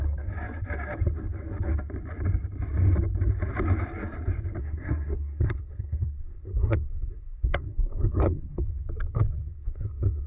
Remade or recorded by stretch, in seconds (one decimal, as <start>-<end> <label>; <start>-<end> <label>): 0.0-4.6 recorded; 4.6-8.8 remade; 8.8-9.5 recorded; 9.5-10.3 remade